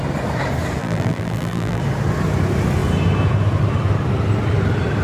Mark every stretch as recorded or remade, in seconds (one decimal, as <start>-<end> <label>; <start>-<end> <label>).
0.0-0.8 recorded; 0.8-1.8 remade; 1.8-5.0 recorded